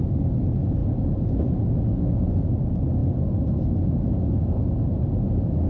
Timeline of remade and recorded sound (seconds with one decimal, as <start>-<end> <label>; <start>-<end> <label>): 0.0-5.7 recorded